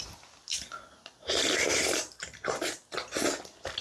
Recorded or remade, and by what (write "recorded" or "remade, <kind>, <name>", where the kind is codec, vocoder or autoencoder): recorded